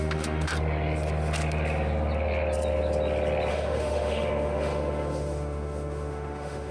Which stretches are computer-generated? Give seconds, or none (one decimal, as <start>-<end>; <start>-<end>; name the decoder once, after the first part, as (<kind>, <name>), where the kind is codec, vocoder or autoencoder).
0.0-0.5 (autoencoder, DAC-VAE); 3.5-6.7